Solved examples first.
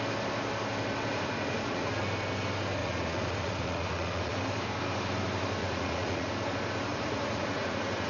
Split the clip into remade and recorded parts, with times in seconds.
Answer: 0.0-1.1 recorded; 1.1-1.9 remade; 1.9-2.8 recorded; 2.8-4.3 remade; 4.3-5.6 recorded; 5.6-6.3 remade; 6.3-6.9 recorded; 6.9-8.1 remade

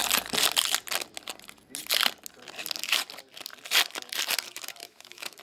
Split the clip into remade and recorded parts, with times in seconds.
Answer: 0.0-4.8 recorded; 4.8-5.4 remade

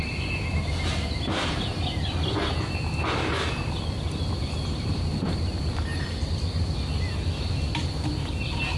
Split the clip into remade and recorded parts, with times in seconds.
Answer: 0.0-8.8 recorded

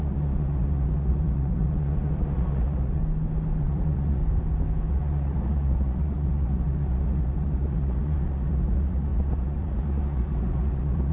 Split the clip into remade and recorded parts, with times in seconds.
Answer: 0.0-3.0 remade; 3.0-3.6 recorded; 3.6-4.2 remade; 4.2-4.9 recorded; 4.9-11.1 remade